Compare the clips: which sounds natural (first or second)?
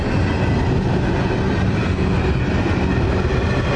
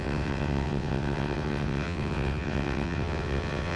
first